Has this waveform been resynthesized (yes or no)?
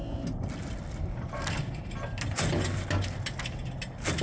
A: no